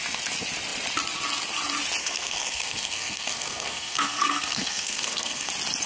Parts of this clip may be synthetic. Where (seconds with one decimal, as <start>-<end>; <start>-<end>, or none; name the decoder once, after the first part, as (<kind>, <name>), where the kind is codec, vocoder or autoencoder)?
2.0-5.5 (codec, SNAC)